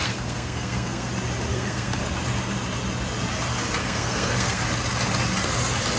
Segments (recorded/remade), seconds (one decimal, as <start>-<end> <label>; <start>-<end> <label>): 0.0-1.1 remade; 1.1-1.5 recorded; 1.5-2.0 remade; 2.0-3.8 recorded; 3.8-4.6 remade; 4.6-6.0 recorded